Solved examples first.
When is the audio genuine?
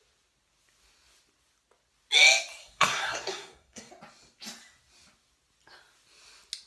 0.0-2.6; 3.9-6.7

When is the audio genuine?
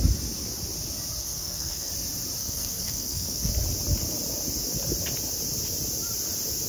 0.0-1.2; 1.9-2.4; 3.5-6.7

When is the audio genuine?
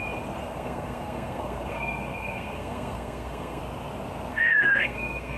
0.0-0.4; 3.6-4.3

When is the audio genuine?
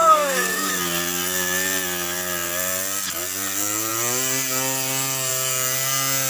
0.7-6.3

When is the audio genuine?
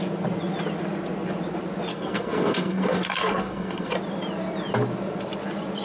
0.0-1.9; 3.9-5.8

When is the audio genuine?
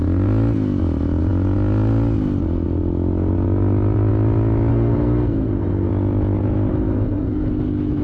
0.0-4.7; 5.9-6.7; 7.5-8.0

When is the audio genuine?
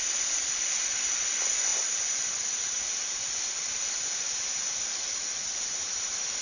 0.0-6.4